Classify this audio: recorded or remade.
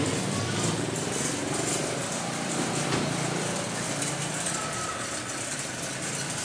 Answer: remade